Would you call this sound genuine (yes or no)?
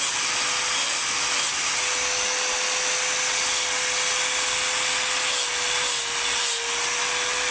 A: yes